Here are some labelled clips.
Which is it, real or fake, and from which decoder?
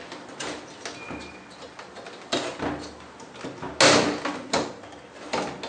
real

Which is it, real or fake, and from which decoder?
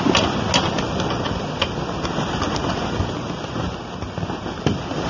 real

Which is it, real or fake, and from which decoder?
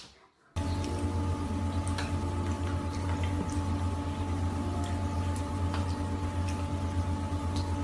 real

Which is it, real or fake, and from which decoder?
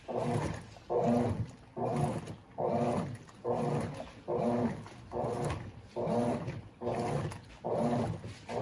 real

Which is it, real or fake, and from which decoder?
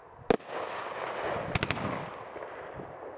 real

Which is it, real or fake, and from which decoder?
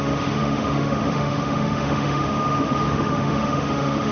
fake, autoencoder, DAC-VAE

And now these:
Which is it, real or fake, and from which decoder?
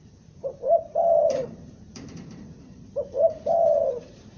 fake, vocoder, BigVGAN v2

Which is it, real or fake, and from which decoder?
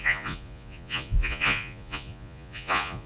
fake, vocoder, Vocos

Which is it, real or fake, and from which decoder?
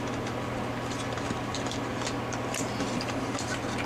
real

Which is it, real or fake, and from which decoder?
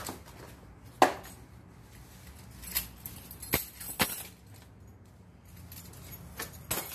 real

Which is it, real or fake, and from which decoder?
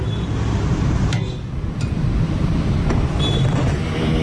real